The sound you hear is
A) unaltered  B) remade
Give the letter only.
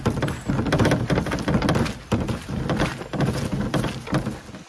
A